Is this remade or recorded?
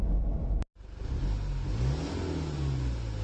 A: recorded